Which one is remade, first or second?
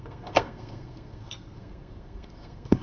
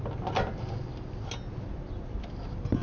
first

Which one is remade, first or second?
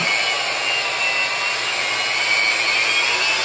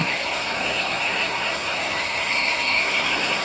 second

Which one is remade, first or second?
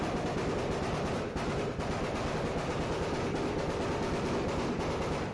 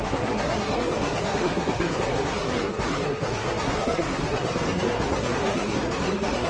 second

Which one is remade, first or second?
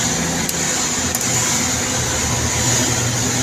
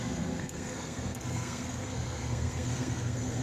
second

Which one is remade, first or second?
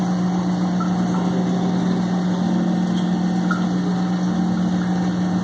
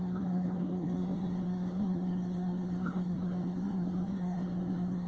second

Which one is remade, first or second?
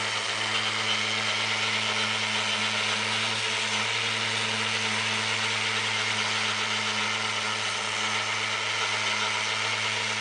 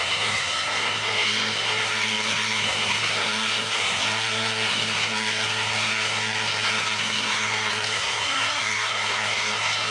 second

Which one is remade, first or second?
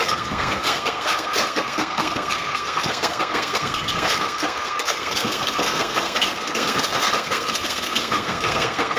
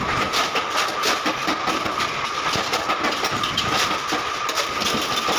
first